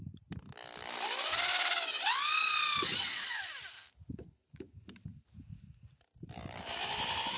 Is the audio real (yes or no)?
yes